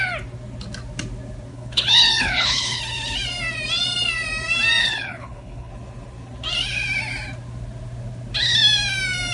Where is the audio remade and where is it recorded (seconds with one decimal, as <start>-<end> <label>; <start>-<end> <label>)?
0.0-1.5 recorded; 1.5-2.8 remade; 2.8-4.8 recorded; 4.8-5.7 remade; 5.7-9.3 recorded